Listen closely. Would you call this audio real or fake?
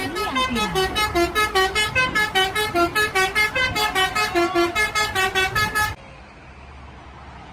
real